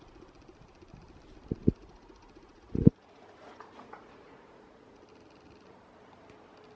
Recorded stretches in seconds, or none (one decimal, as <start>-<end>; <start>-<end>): 0.0-1.6; 5.0-6.8